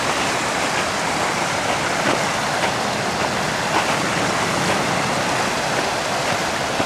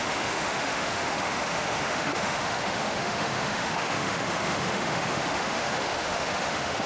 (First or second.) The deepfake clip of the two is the second